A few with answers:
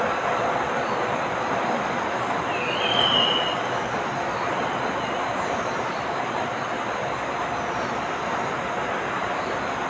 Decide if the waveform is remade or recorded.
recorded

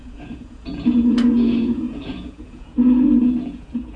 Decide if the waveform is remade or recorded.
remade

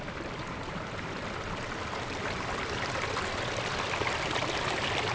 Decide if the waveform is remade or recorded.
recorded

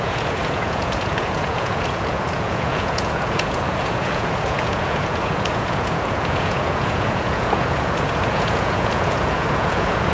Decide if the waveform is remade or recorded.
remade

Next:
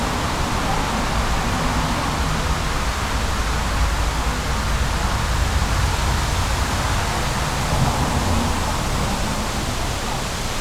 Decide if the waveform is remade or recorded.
recorded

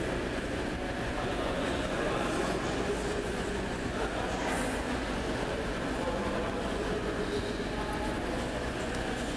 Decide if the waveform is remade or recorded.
remade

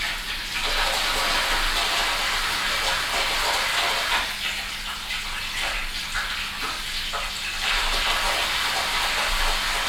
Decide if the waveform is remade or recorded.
recorded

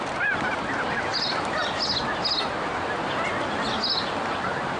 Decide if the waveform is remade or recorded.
recorded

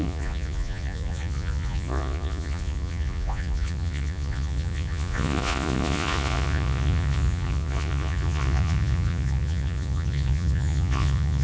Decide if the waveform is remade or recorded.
remade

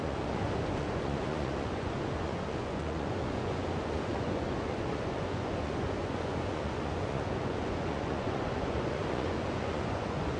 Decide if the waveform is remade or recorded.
remade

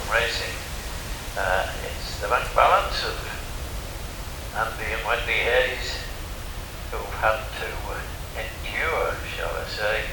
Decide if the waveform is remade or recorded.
recorded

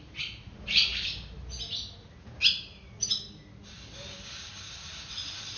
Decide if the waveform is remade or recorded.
recorded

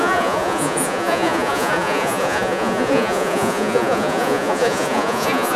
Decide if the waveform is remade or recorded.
remade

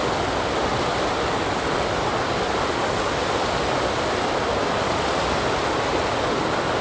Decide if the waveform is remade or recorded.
recorded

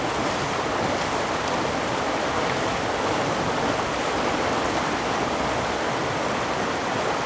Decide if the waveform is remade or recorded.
recorded